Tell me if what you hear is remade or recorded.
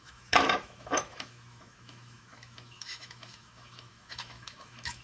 remade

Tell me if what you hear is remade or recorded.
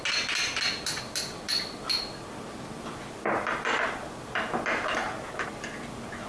recorded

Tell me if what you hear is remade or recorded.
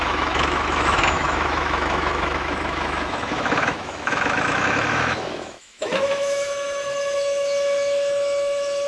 remade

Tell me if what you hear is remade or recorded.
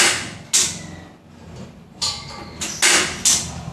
recorded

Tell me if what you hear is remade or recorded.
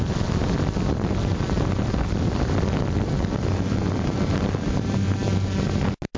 recorded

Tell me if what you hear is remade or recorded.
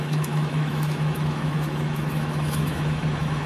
remade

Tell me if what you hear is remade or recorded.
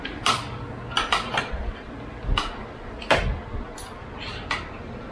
recorded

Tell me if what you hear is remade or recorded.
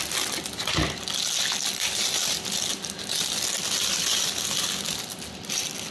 recorded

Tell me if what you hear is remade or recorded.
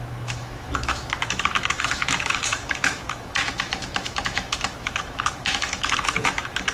remade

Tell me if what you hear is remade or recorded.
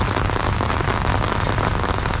recorded